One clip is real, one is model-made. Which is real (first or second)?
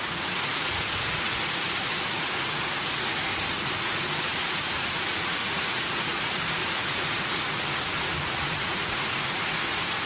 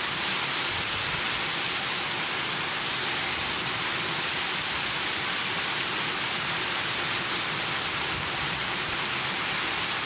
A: second